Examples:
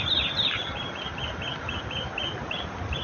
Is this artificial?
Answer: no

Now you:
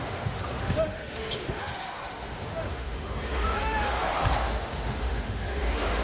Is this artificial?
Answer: yes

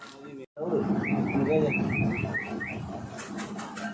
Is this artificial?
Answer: no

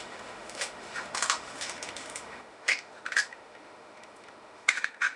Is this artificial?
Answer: yes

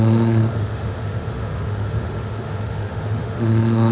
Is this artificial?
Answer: yes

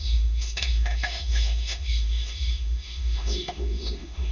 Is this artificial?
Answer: yes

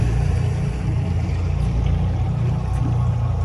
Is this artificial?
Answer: no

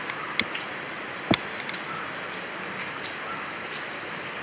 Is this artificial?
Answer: no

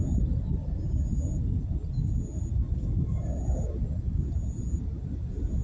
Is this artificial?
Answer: no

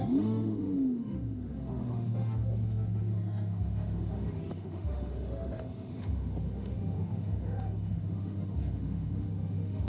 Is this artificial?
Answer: yes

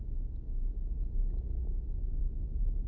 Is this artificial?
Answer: no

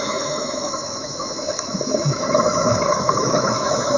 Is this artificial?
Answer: yes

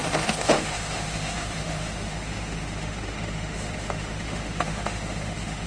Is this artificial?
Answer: yes